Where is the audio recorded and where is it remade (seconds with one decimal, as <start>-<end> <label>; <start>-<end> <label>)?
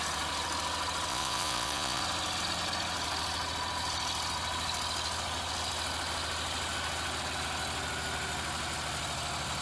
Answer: 0.0-1.1 recorded; 1.1-2.0 remade; 2.0-9.6 recorded